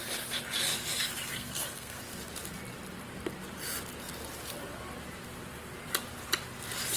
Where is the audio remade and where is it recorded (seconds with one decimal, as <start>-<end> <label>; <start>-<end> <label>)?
0.0-1.3 recorded; 1.3-2.0 remade; 2.0-7.0 recorded